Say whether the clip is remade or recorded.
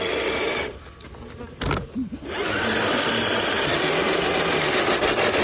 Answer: recorded